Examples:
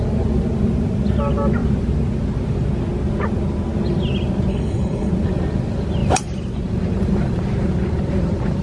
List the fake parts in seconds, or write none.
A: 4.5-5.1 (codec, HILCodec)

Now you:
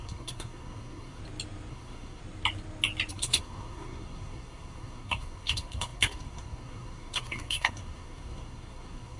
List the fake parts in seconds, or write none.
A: 0.0-1.2 (codec, SNAC); 1.7-2.2; 3.1-9.2